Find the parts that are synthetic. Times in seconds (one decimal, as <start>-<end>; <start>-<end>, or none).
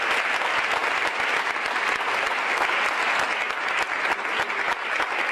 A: none